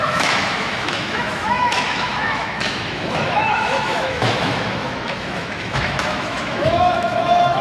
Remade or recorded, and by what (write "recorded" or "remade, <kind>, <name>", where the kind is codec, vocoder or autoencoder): remade, autoencoder, DAC-VAE